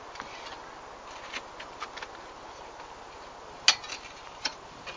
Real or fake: real